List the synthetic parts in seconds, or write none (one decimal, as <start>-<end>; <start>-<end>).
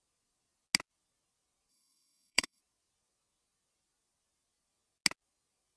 1.7-2.6